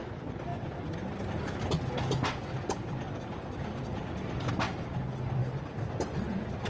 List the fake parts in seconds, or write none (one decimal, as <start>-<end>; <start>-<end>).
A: none